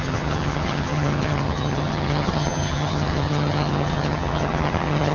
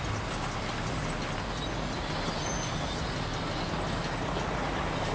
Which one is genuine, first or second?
second